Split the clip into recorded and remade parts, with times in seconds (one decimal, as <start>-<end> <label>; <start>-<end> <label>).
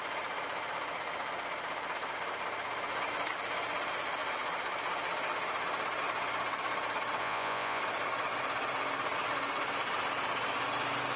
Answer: 0.0-7.2 recorded; 7.2-7.8 remade; 7.8-11.2 recorded